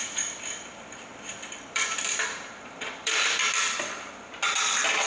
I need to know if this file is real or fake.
fake